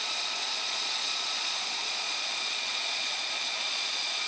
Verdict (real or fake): fake